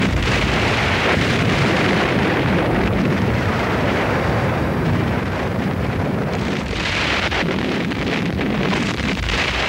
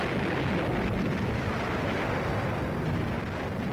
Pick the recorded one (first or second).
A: second